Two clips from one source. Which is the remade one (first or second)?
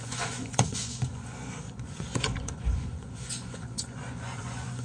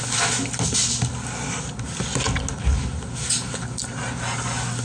first